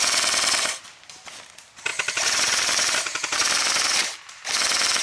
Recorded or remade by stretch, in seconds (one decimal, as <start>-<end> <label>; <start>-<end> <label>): 0.0-1.9 recorded; 1.9-4.2 remade; 4.2-5.0 recorded